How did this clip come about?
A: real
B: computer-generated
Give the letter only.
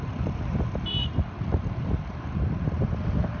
B